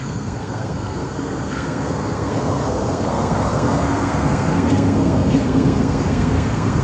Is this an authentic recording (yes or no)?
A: no